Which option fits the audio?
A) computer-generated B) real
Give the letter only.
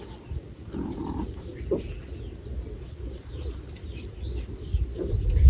B